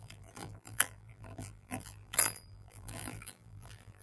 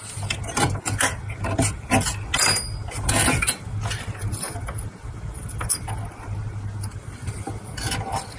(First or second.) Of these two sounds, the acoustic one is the second